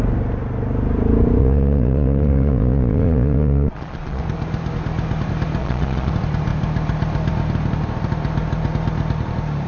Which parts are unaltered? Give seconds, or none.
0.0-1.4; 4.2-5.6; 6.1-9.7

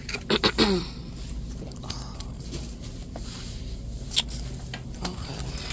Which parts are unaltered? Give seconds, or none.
0.0-5.7

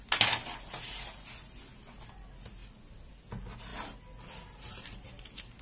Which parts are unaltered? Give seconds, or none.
0.0-5.6

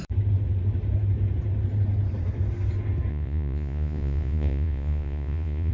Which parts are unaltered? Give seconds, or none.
0.0-3.1

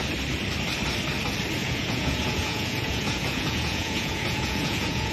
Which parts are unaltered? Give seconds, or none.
0.0-1.6